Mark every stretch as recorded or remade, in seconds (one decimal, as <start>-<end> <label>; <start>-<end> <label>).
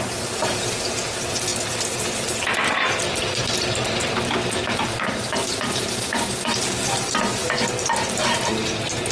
0.0-3.4 recorded; 3.4-4.1 remade; 4.1-4.9 recorded; 4.9-5.8 remade; 5.8-9.1 recorded